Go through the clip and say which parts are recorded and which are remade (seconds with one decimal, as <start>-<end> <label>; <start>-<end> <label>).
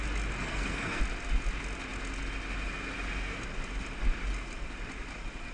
0.0-0.4 recorded; 0.4-1.0 remade; 1.0-5.5 recorded